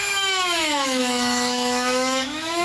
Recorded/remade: remade